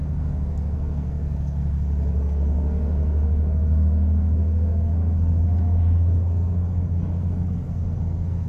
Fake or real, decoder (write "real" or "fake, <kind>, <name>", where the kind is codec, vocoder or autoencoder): fake, codec, SNAC